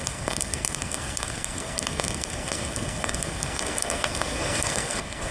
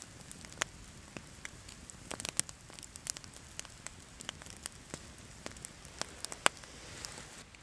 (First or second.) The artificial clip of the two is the first